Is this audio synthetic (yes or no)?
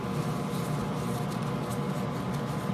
no